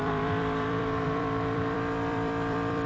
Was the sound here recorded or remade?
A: remade